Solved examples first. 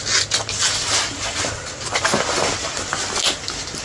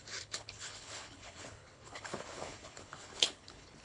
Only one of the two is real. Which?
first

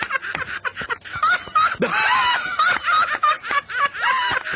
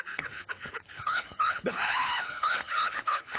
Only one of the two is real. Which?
first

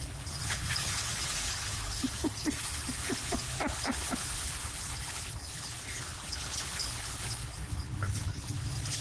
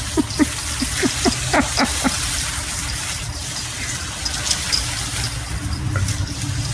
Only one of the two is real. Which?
second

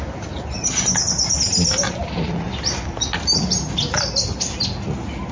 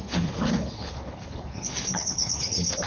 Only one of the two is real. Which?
first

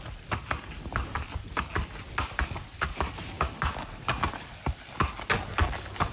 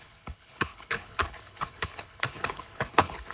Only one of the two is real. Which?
first